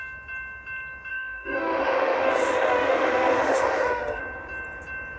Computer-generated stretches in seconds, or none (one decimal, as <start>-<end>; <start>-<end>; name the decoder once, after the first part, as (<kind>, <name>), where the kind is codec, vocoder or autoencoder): 1.1-4.2 (autoencoder, DAC-VAE)